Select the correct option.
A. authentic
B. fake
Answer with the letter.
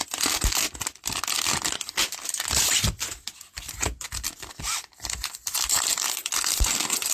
A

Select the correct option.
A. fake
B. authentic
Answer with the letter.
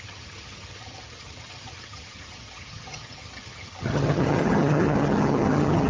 A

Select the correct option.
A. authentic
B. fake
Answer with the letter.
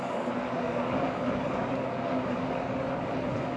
B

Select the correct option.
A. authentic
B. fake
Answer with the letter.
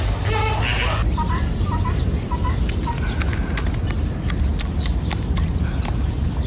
A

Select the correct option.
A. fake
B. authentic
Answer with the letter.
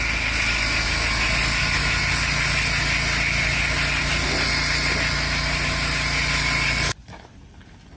B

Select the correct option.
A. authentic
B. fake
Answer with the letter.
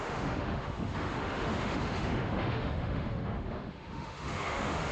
B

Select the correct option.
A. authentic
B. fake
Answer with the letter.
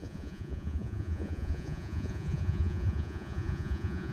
B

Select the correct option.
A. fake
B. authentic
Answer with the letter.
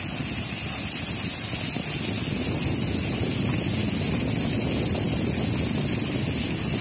B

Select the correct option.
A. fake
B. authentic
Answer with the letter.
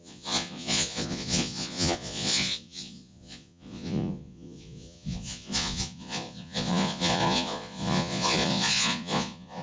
A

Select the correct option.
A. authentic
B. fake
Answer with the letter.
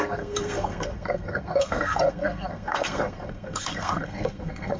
B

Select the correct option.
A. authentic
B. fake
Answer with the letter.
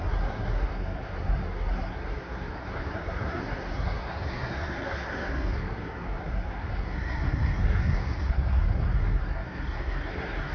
B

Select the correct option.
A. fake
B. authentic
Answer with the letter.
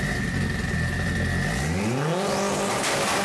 B